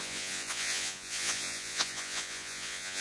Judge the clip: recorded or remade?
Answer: remade